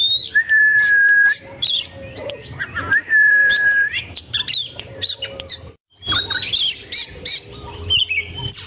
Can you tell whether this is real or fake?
fake